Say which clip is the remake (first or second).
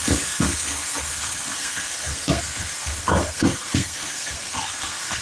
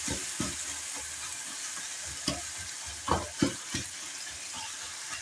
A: first